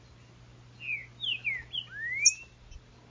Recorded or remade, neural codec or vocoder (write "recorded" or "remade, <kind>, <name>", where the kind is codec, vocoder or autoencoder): recorded